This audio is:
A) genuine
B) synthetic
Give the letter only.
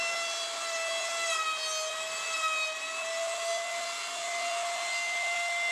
A